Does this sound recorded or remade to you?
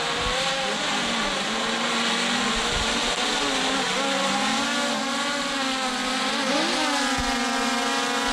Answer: recorded